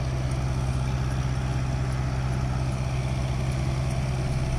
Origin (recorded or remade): recorded